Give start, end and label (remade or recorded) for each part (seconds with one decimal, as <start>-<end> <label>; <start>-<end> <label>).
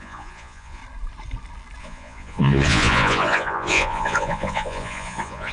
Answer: 0.0-0.8 remade; 0.8-1.8 recorded; 1.8-5.5 remade